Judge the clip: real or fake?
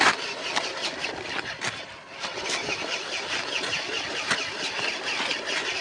fake